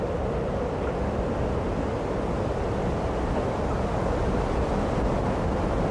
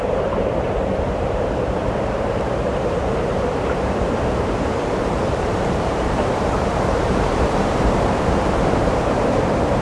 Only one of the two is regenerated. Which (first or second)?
second